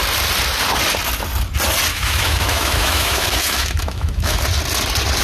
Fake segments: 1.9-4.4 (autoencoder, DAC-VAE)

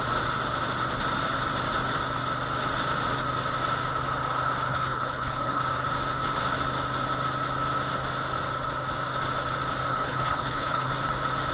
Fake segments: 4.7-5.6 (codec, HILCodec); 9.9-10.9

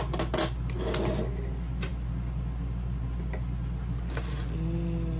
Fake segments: none

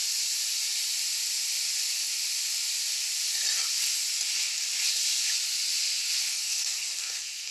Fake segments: 6.3-7.5 (codec, SNAC)

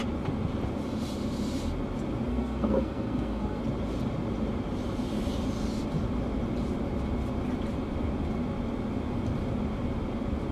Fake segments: 2.3-3.6 (codec, SNAC)